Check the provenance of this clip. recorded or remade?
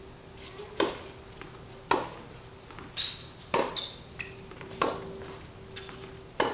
recorded